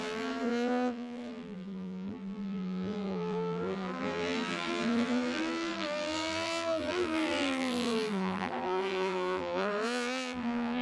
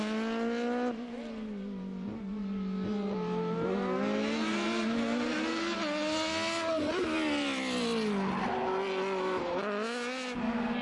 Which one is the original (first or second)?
second